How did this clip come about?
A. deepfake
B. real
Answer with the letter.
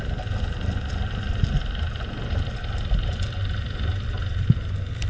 B